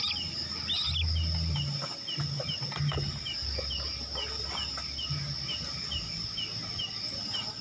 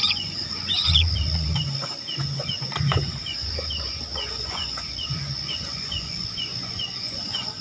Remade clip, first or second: second